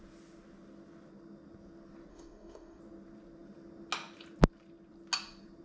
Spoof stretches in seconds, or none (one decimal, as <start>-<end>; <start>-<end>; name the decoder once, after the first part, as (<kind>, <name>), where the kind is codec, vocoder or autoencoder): 2.1-2.8 (autoencoder, DAC-VAE)